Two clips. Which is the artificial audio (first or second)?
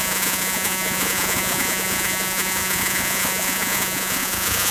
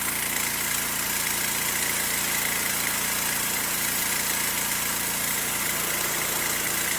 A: first